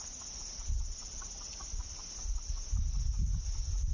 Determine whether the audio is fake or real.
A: real